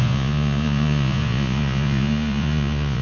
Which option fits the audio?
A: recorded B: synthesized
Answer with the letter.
B